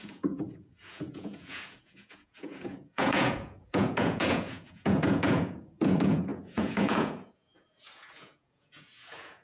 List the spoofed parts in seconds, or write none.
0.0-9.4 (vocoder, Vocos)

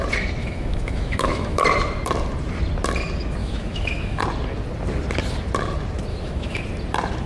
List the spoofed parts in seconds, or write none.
0.4-1.6 (autoencoder, DAC-VAE); 3.4-4.2; 6.1-6.6

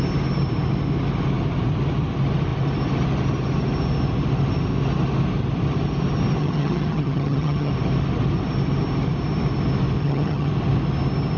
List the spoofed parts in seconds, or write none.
6.4-7.7 (vocoder, HiFi-GAN); 10.0-10.5

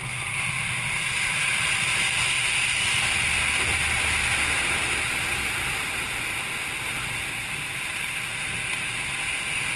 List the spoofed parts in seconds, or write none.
none

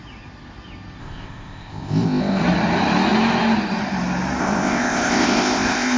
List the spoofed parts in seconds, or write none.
1.0-2.4 (codec, ZipCodec); 4.4-6.0

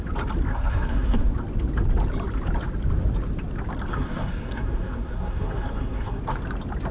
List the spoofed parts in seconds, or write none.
0.5-1.3 (codec, SNAC); 3.9-6.2

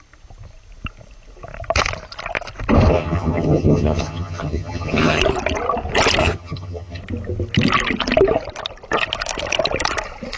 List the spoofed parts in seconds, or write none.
2.9-5.2 (vocoder, HiFi-GAN); 6.2-7.0

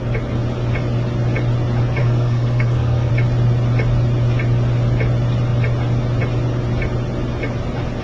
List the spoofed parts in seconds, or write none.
2.0-3.1 (codec, SNAC)